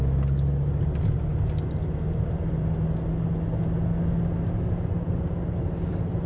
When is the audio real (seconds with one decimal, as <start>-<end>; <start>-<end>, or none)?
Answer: 0.0-6.3